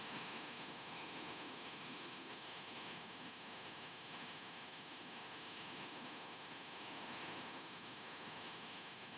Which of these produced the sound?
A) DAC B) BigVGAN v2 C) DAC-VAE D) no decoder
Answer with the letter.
C